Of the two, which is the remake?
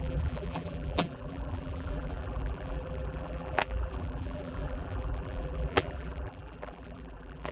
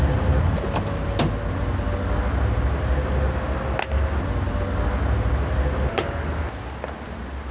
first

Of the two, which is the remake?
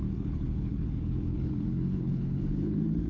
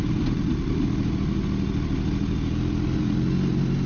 first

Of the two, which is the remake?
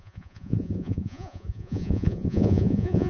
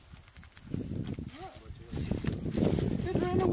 first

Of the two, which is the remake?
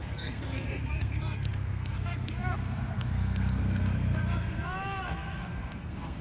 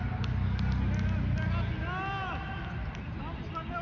first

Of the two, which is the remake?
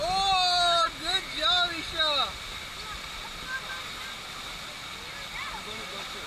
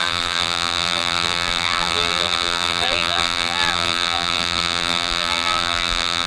second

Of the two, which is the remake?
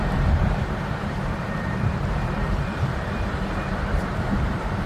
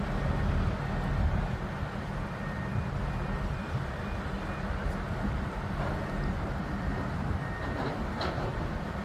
first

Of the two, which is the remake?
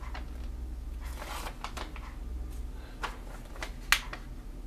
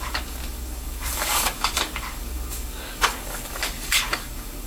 second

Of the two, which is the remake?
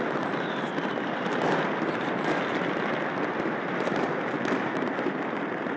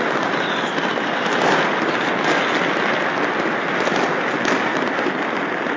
first